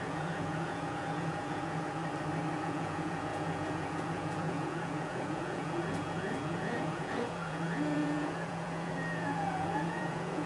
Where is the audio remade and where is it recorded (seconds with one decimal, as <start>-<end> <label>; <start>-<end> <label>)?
0.0-2.0 remade; 2.0-2.6 recorded; 2.6-10.5 remade